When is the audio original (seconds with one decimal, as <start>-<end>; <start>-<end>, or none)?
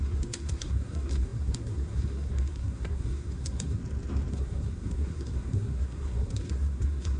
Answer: 3.8-4.3